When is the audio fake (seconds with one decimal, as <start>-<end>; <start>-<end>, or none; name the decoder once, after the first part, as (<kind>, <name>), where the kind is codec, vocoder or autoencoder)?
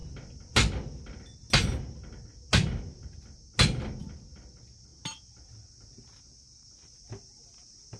none